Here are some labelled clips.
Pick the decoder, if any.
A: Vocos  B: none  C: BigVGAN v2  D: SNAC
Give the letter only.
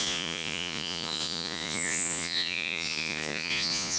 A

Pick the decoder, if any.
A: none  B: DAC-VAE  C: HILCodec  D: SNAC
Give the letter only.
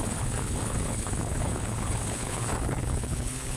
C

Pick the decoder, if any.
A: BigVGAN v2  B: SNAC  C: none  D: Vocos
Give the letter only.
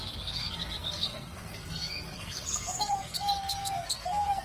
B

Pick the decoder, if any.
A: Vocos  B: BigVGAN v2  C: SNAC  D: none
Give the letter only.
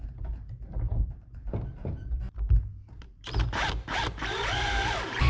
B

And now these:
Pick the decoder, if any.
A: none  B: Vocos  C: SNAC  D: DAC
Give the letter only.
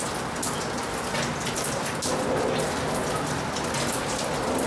A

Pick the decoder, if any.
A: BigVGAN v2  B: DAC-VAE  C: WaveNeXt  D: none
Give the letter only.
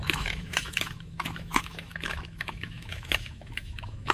B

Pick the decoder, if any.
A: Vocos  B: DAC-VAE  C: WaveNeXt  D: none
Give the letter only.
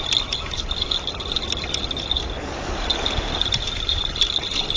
D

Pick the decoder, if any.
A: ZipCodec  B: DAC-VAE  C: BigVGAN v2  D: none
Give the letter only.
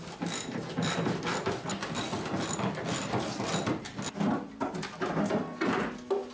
D